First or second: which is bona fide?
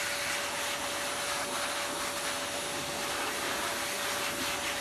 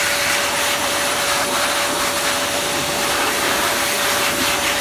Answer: first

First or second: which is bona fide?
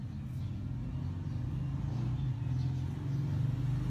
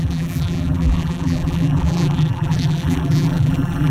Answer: first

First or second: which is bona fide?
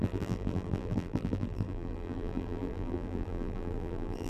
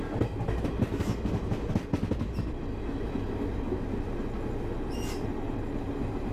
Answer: second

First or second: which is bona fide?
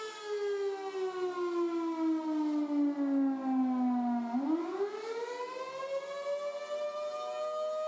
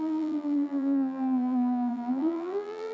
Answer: first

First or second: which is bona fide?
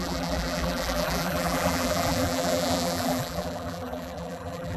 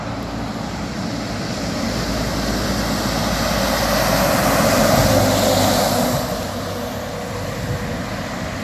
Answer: second